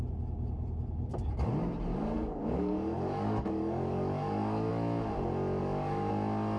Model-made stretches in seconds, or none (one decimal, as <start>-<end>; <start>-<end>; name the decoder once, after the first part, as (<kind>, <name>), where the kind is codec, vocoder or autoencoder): 1.9-4.7 (codec, DAC); 5.6-6.1